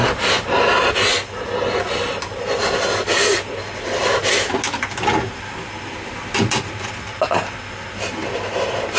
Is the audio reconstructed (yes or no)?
no